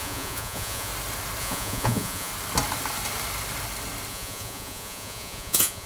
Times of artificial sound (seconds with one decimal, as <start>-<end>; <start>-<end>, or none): 0.0-0.9; 1.4-2.3; 4.1-5.9